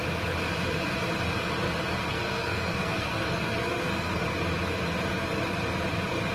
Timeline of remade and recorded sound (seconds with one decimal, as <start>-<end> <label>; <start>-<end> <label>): 0.0-2.0 recorded; 2.0-4.2 remade; 4.2-6.3 recorded